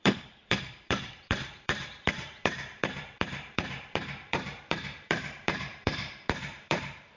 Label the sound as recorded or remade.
remade